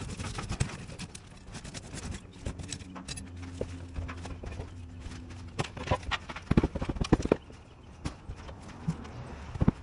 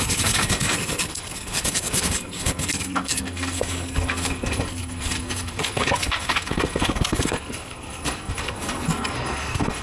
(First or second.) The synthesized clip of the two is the second